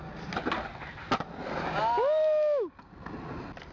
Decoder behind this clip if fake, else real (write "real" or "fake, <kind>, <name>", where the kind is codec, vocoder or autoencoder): real